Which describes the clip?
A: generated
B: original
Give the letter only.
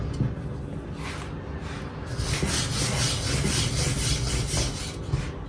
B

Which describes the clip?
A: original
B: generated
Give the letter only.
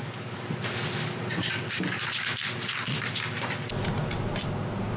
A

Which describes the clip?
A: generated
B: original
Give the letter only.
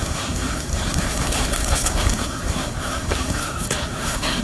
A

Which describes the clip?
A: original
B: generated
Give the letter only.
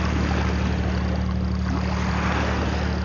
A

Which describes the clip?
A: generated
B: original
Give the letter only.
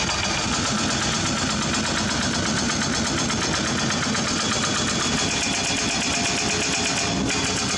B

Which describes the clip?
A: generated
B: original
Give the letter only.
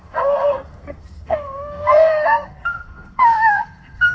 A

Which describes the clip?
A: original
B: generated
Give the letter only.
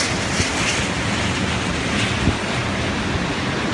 A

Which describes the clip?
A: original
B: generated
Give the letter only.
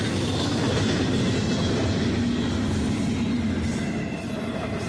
A